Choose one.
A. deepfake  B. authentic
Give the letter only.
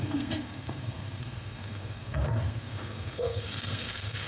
A